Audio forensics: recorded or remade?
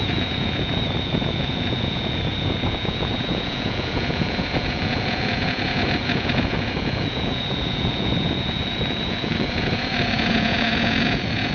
remade